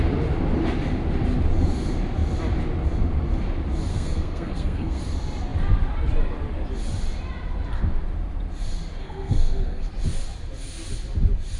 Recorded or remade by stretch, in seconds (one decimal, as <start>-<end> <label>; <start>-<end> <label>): 0.0-3.9 recorded; 3.9-5.0 remade; 5.0-9.0 recorded; 9.0-9.9 remade; 9.9-11.6 recorded